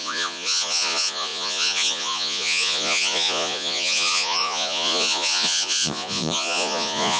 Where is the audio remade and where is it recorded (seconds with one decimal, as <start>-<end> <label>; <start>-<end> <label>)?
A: 0.0-7.2 remade